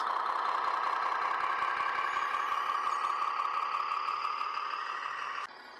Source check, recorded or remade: recorded